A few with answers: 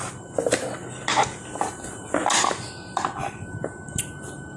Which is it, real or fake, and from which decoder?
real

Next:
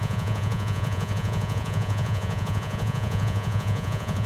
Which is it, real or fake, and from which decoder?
fake, vocoder, Vocos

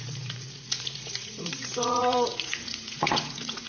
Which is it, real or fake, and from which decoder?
fake, vocoder, Vocos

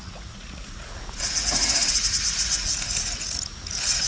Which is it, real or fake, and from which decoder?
fake, vocoder, Vocos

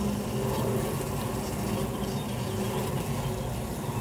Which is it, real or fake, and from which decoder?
real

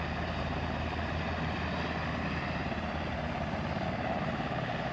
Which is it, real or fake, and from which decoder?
real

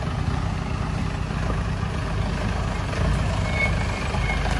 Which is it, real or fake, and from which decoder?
real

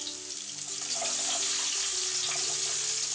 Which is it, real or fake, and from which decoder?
real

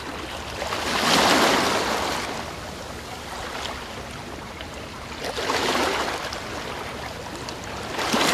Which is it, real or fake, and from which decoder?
real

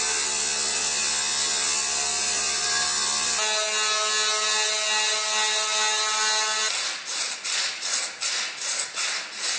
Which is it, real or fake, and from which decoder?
real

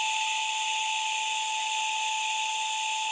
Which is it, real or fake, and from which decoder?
real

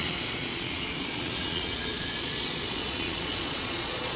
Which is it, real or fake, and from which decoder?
fake, vocoder, Vocos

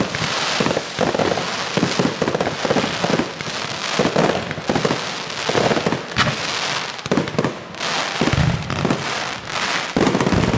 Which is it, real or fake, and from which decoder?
real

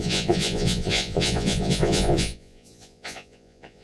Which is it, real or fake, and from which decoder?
fake, vocoder, Vocos